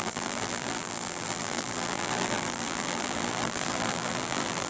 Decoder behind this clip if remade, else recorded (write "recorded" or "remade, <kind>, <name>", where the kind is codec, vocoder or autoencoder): remade, vocoder, BigVGAN v2